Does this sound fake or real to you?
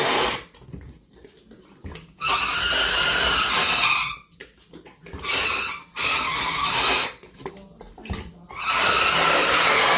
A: real